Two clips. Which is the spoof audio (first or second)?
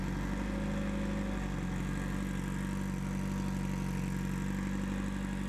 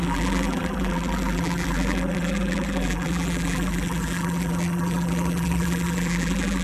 second